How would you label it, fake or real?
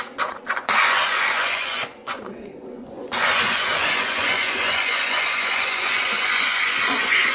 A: fake